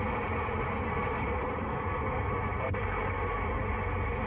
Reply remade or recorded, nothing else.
remade